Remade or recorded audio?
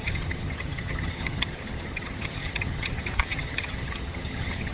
remade